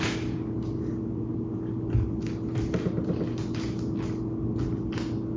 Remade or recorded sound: recorded